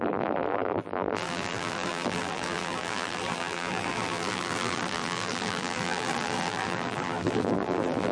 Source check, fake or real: fake